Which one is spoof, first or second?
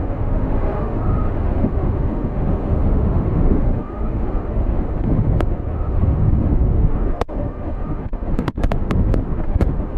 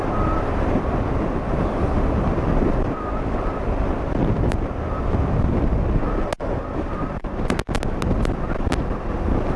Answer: first